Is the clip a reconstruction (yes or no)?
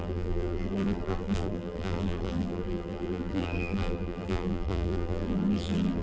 yes